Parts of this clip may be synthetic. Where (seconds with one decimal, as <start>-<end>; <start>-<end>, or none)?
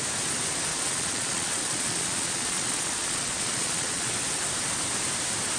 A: 0.7-4.1